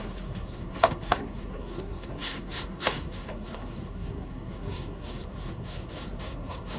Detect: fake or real fake